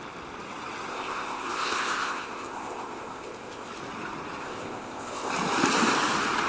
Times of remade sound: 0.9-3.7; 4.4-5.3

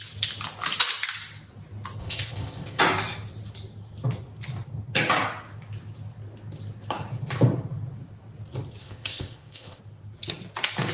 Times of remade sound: 2.0-2.8; 8.8-9.8

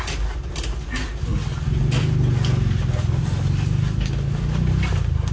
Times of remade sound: none

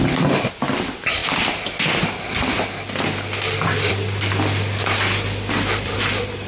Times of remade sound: none

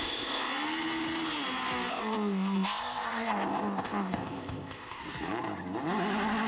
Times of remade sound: 0.0-0.5; 1.9-5.0

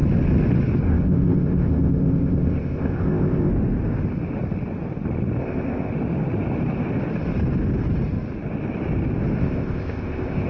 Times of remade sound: 0.8-3.5; 5.4-5.9; 9.4-10.5